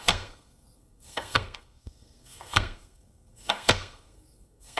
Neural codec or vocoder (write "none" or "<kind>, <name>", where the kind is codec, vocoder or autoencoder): codec, SNAC